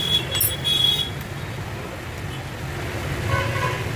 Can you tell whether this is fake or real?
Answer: real